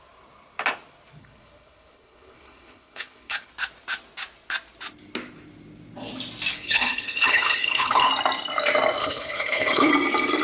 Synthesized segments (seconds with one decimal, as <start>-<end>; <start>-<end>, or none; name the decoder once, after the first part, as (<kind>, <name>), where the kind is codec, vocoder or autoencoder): 1.2-3.5 (codec, HILCodec); 6.5-8.1; 9.0-9.9